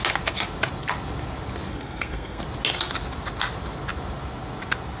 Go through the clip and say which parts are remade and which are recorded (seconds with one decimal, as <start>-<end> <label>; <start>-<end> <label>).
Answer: 0.0-1.7 recorded; 1.7-2.4 remade; 2.4-5.0 recorded